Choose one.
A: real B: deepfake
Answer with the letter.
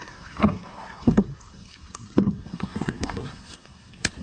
B